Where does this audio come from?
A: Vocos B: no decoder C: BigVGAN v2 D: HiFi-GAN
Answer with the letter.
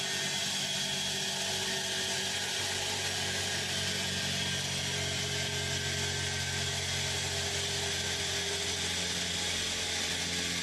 B